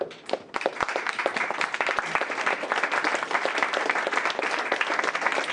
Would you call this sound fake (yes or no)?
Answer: no